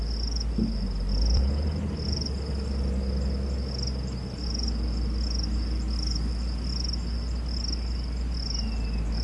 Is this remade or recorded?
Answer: recorded